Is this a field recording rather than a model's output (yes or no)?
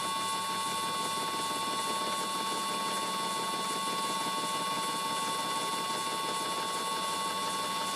yes